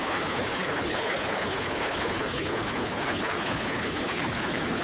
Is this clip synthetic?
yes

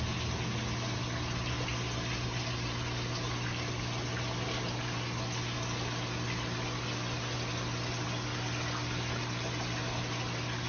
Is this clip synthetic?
no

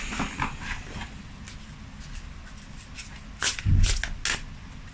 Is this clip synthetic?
no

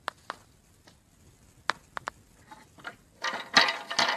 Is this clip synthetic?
no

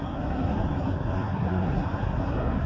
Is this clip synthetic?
yes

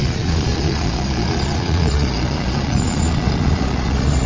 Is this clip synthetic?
yes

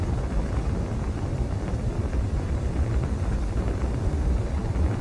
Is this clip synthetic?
no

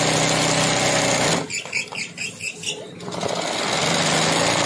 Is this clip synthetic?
no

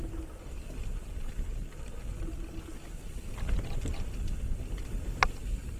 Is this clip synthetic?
no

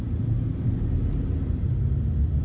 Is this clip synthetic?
no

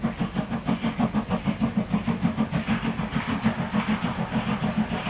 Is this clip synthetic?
no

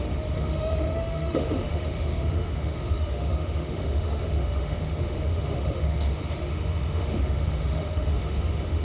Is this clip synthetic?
yes